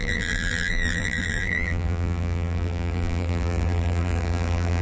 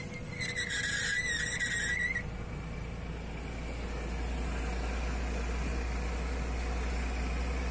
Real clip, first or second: second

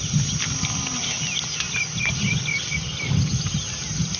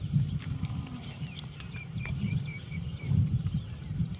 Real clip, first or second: first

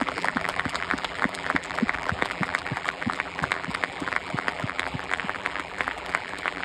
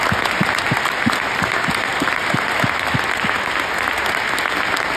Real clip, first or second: second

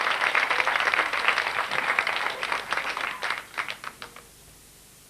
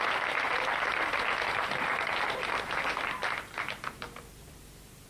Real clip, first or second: first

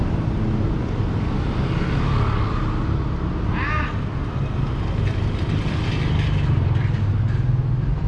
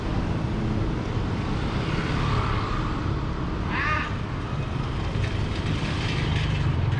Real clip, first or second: first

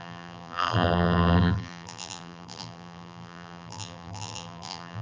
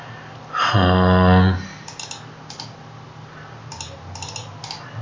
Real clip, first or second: second